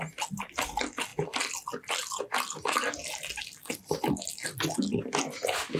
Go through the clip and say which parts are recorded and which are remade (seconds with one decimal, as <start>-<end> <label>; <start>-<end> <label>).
0.0-5.8 recorded